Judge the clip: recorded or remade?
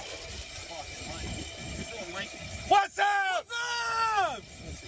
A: recorded